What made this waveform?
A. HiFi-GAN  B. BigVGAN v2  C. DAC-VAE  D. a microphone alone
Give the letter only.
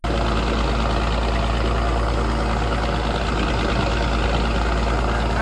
D